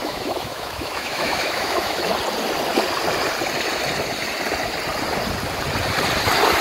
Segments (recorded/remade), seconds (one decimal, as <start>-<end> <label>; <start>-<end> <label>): 0.0-2.1 remade; 2.1-6.6 recorded